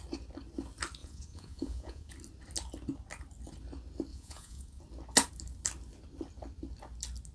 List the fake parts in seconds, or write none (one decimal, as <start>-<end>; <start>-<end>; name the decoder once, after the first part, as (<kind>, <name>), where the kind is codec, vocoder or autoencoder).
1.0-2.1 (vocoder, Vocos); 4.1-4.8